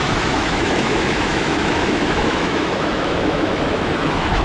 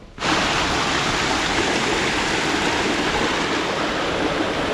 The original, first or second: second